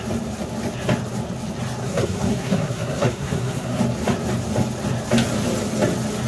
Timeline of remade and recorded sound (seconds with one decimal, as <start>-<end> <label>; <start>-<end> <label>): 0.0-1.8 recorded; 1.8-3.8 remade; 3.8-6.3 recorded